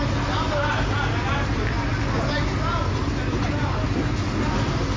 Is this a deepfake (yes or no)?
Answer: no